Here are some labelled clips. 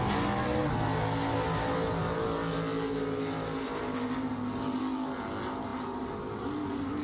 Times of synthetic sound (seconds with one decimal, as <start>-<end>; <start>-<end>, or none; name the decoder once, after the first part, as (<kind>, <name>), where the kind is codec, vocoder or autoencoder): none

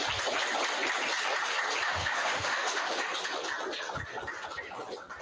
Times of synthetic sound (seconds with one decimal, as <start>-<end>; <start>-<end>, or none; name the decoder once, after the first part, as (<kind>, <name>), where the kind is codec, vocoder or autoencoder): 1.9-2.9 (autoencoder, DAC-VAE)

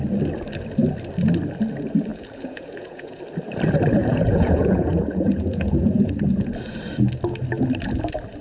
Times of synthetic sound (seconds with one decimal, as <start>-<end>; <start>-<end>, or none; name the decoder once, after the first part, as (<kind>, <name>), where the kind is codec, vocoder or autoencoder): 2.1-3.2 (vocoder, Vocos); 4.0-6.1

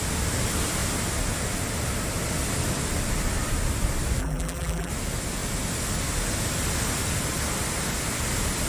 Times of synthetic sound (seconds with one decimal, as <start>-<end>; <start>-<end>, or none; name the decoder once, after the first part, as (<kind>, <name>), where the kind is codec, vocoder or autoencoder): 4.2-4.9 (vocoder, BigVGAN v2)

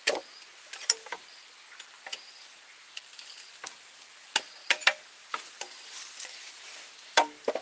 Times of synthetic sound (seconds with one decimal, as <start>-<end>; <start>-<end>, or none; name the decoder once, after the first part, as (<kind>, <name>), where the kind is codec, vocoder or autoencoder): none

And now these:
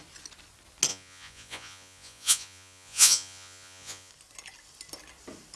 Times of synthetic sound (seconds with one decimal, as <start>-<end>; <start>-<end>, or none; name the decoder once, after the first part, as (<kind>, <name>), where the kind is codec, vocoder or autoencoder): 0.9-4.1 (vocoder, Vocos)

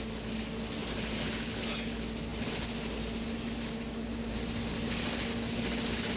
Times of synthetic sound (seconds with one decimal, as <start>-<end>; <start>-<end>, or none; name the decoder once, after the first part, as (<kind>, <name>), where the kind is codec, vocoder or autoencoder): none

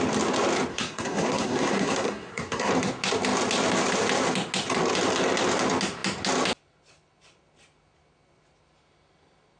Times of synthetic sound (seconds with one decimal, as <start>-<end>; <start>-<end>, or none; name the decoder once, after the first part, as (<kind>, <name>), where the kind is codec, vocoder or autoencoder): 0.7-2.7 (codec, SNAC)